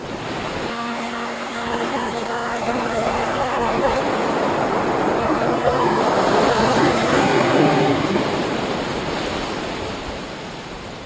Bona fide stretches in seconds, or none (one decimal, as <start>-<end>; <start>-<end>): 0.0-0.7; 4.0-5.2; 6.0-6.5; 8.2-11.1

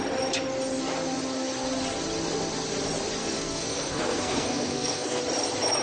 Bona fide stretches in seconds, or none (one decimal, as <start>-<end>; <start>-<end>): 0.0-3.2; 5.2-5.8